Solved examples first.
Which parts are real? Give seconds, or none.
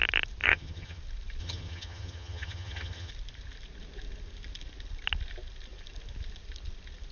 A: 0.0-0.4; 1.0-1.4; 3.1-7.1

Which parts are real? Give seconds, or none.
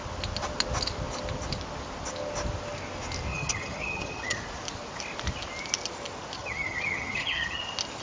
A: 0.0-3.3; 4.4-6.4; 7.6-8.0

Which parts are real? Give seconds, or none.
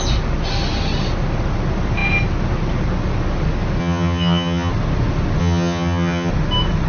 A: 0.0-3.8; 4.7-5.4; 6.3-6.9